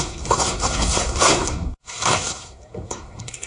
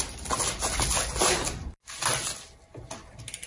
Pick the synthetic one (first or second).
first